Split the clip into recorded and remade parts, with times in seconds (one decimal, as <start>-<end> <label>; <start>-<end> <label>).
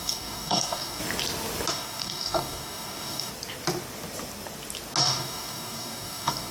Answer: 0.0-1.0 remade; 1.0-1.7 recorded; 1.7-3.3 remade; 3.3-5.0 recorded; 5.0-6.5 remade